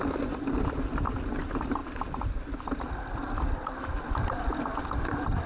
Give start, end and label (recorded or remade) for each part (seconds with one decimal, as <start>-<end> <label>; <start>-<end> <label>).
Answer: 0.0-5.5 recorded